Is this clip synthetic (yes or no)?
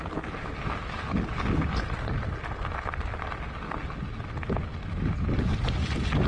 no